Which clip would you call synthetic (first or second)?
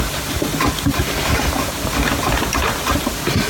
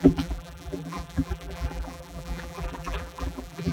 second